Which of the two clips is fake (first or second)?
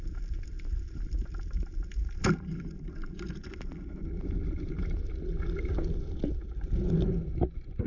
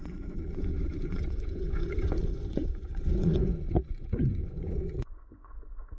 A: second